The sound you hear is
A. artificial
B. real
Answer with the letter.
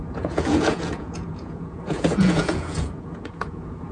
A